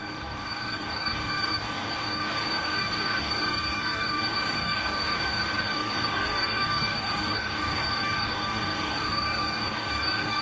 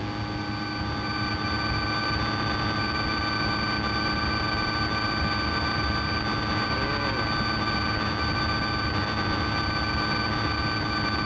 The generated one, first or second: first